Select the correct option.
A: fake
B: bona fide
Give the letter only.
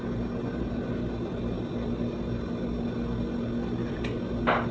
B